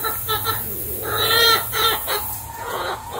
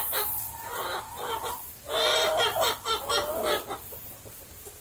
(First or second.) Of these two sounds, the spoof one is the first